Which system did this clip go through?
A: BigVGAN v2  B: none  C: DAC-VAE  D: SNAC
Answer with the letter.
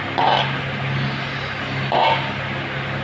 B